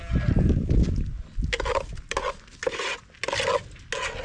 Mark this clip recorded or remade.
recorded